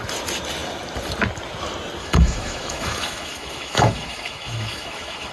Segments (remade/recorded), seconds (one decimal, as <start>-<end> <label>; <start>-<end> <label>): 0.0-2.0 recorded; 2.0-5.3 remade